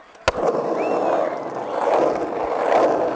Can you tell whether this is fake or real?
real